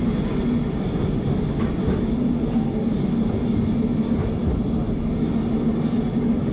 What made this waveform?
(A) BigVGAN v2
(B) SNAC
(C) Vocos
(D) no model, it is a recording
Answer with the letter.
D